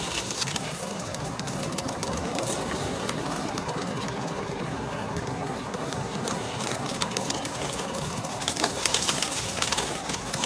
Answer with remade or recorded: remade